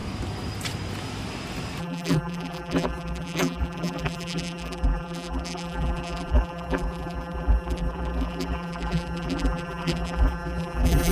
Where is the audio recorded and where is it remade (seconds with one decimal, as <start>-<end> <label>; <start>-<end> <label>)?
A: 0.0-1.8 recorded; 1.8-11.1 remade